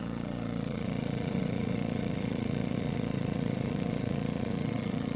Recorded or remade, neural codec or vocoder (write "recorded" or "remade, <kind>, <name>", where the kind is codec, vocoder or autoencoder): remade, vocoder, Vocos